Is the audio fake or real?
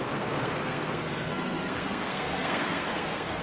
fake